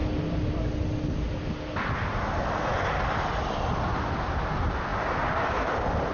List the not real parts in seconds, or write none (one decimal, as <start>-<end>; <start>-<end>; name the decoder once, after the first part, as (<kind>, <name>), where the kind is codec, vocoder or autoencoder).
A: none